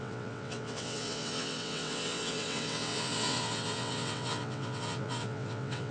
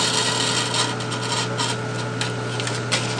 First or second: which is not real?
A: first